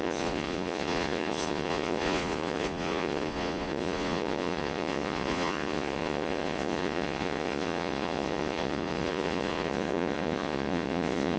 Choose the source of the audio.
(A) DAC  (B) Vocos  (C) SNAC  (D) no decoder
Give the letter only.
B